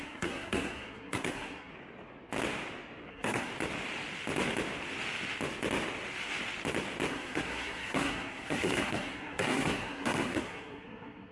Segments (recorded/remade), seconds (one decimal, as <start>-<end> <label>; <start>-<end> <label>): 0.0-1.7 remade; 1.7-3.1 recorded; 3.1-3.5 remade; 3.5-7.1 recorded; 7.1-11.3 remade